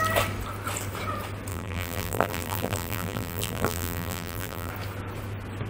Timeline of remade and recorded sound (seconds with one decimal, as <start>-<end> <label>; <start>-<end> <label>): 0.0-1.5 recorded; 1.5-4.7 remade; 4.7-5.7 recorded